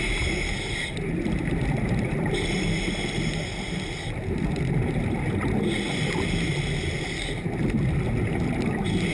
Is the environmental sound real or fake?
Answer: real